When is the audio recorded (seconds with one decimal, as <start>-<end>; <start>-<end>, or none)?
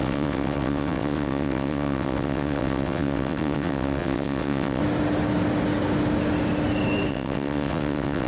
4.8-7.1